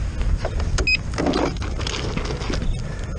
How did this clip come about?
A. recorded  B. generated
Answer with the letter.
A